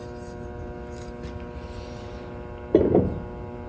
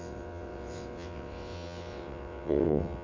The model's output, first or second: second